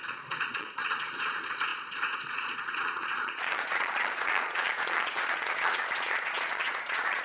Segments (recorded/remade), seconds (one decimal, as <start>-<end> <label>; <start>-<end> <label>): 0.0-7.2 remade